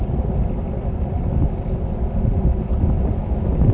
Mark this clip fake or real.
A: real